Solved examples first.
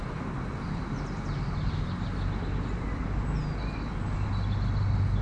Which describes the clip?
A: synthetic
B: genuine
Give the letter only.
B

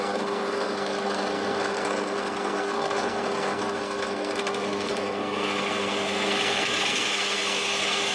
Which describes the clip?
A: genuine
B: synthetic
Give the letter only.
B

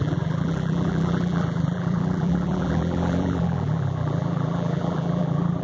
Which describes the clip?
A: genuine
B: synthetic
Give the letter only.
B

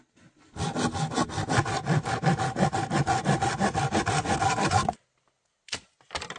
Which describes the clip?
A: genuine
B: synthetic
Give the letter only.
A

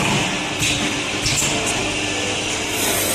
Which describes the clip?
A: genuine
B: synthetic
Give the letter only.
A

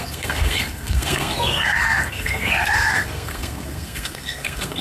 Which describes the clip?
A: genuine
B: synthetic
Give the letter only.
B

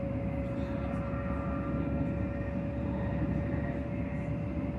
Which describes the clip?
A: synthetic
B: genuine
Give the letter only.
B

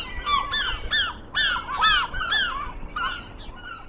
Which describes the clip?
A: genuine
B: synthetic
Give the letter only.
A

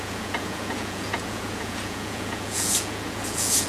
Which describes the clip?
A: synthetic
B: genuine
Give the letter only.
A